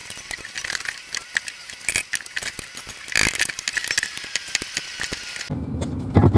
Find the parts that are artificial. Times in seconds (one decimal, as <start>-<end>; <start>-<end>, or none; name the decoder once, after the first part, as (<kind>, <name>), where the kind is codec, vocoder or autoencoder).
none